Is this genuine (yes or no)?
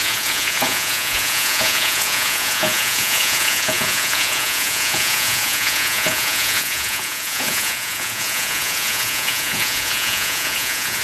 no